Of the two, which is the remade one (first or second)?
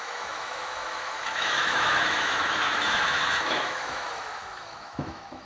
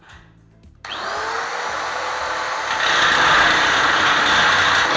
first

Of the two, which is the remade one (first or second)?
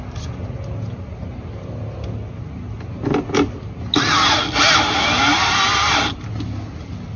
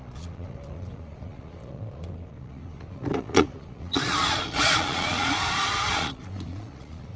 second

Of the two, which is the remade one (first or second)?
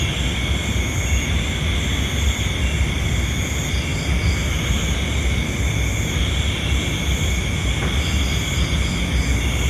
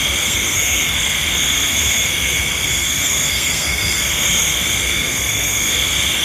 second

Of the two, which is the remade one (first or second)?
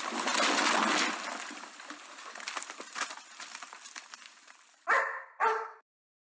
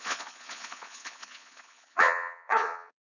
second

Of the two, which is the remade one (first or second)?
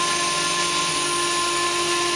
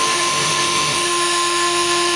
second